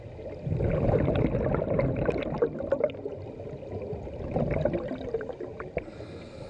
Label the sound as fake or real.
real